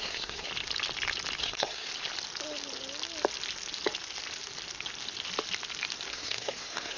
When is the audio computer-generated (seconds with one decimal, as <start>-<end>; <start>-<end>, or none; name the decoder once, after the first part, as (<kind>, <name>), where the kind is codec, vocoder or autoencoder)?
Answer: 0.0-0.5 (codec, SNAC); 1.4-1.9; 6.1-7.0